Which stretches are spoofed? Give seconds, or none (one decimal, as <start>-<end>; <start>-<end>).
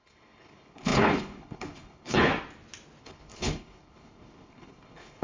0.0-2.3; 3.0-5.2